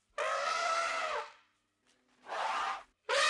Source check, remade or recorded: recorded